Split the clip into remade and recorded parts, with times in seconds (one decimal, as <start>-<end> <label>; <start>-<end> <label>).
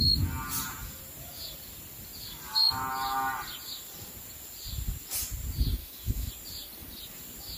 0.0-5.8 recorded; 5.8-6.3 remade; 6.3-7.6 recorded